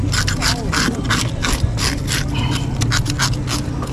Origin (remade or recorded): recorded